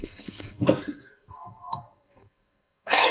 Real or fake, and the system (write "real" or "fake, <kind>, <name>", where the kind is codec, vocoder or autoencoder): fake, codec, SNAC